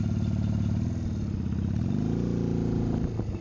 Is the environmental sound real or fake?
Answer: real